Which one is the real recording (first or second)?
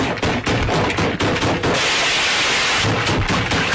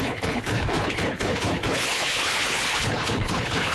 first